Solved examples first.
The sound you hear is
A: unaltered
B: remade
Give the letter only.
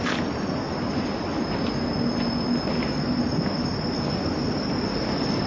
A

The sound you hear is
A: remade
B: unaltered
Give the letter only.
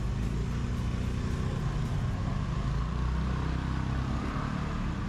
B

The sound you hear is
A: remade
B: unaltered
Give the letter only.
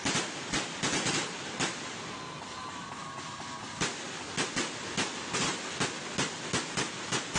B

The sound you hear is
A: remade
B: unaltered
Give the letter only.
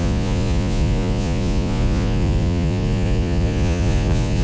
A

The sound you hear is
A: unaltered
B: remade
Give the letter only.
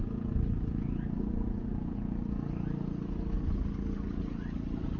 A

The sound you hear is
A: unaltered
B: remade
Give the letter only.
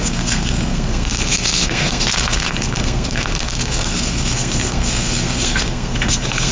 B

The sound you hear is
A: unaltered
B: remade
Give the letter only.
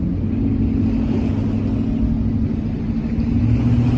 A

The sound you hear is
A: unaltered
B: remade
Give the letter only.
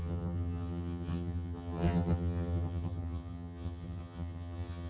B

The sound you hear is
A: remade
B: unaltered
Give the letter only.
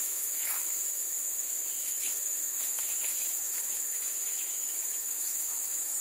A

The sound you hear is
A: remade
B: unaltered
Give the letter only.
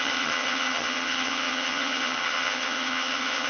A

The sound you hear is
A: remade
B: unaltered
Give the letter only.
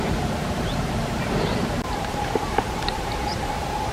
A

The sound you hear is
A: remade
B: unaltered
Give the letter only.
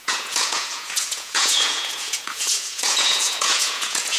A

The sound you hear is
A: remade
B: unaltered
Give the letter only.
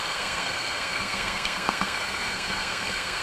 A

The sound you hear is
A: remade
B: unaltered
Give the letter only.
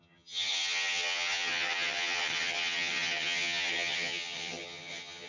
A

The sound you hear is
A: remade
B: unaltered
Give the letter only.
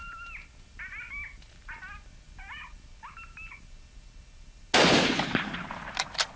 B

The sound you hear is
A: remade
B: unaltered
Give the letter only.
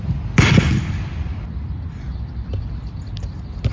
B